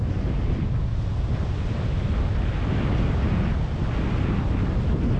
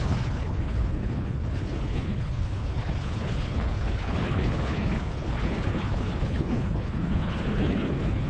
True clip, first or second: first